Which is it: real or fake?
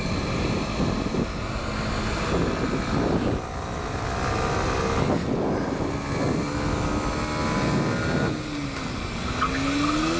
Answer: real